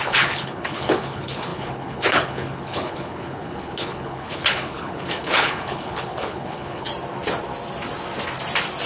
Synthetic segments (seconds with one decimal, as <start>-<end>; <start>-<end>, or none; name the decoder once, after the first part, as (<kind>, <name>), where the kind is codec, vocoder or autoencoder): 0.0-6.9 (codec, HILCodec)